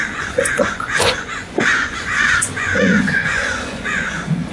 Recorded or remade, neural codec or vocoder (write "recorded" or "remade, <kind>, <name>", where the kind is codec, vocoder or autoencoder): remade, vocoder, Vocos